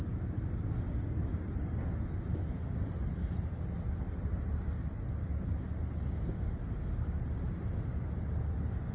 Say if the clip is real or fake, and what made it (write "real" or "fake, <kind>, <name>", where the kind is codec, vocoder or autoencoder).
real